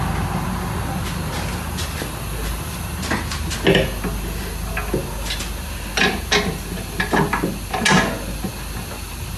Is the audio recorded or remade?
recorded